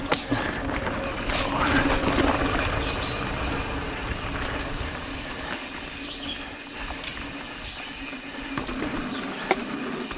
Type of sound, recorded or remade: recorded